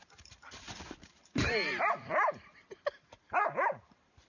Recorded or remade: remade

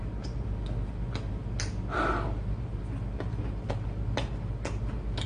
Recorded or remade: recorded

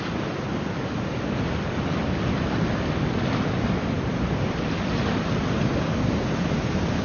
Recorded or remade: recorded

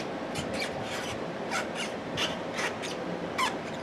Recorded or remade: remade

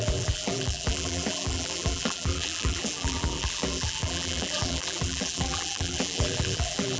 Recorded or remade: remade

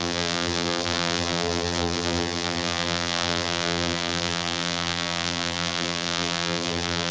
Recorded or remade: remade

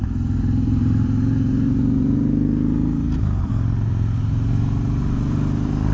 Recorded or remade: remade